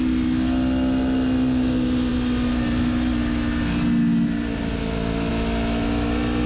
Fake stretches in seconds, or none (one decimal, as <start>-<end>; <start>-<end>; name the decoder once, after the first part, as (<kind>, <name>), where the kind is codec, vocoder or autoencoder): none